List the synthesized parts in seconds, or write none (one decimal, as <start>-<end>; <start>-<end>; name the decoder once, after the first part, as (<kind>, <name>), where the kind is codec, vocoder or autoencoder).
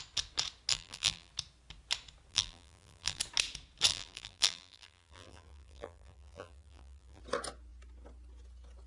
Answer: 0.7-1.3 (vocoder, BigVGAN v2); 2.3-3.2; 3.9-7.2